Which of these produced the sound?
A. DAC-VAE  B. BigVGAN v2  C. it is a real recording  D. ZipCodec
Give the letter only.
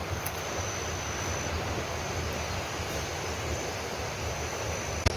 C